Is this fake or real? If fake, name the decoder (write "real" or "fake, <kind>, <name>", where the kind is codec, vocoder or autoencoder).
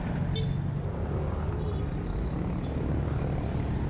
real